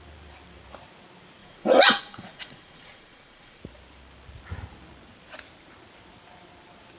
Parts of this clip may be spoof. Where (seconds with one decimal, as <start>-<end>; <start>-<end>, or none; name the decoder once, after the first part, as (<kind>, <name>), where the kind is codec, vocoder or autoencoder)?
1.4-3.6 (vocoder, Vocos)